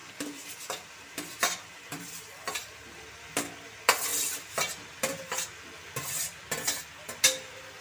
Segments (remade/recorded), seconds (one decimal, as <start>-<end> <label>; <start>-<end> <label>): 0.0-2.1 remade; 2.1-7.8 recorded